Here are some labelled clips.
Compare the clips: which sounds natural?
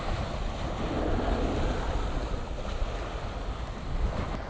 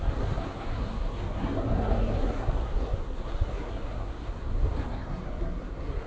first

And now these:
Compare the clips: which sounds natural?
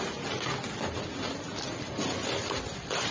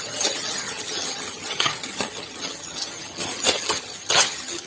first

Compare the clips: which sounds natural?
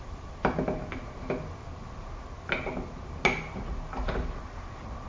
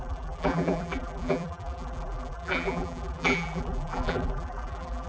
first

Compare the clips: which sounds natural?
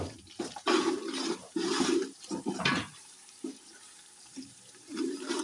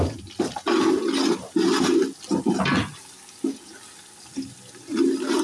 second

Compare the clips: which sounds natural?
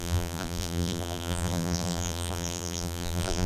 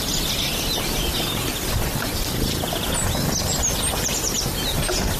second